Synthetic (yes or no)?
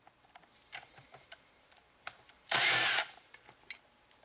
yes